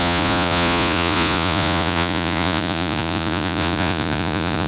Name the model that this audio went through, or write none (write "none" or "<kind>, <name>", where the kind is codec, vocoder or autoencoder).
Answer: vocoder, Vocos